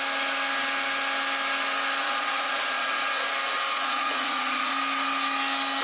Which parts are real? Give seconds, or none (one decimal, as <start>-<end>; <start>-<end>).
0.0-2.0; 3.1-3.7; 4.7-5.8